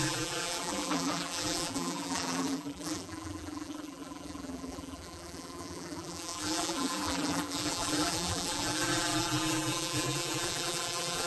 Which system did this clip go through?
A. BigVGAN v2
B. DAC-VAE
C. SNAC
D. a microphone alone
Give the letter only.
A